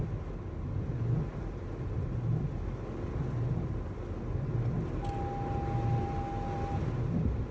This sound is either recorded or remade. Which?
recorded